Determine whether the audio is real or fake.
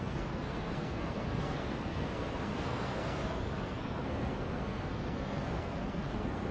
fake